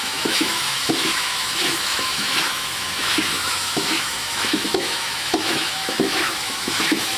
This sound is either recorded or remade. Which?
remade